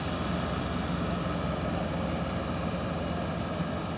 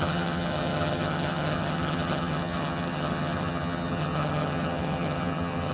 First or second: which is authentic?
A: first